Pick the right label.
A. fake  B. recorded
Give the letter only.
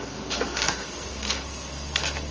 A